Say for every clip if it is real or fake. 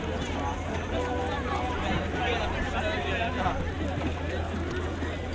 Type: real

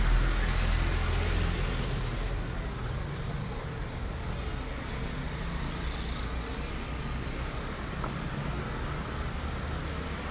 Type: real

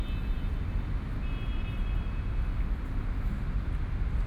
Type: real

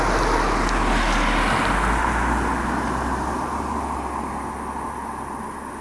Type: real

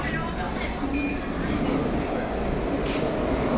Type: real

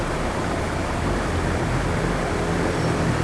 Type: real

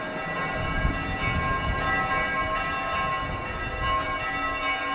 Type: real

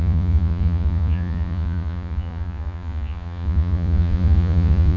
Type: fake